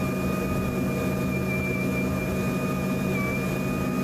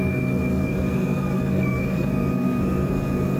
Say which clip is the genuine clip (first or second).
first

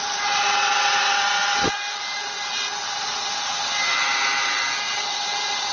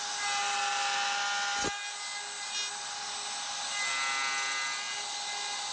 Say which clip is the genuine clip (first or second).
second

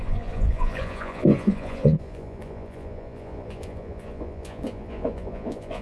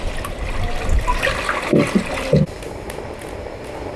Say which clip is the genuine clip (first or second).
second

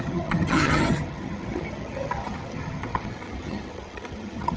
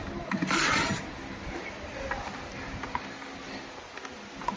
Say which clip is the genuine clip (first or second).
second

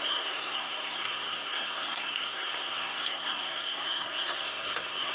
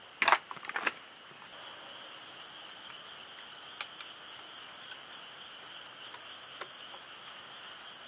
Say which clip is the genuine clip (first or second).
second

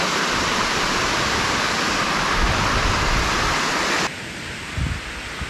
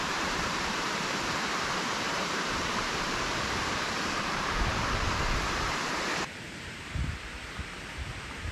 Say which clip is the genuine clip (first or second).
first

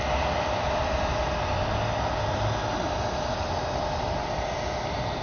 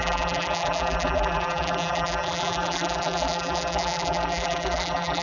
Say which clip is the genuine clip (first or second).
first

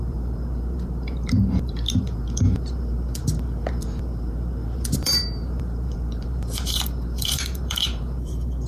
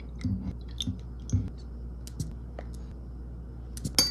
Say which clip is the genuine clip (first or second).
second